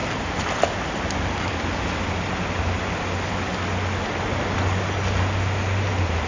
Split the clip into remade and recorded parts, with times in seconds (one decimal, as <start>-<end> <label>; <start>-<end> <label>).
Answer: 0.0-6.3 recorded